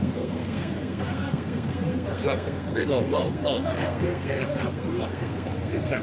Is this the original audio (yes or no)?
no